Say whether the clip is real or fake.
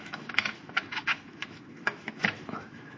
fake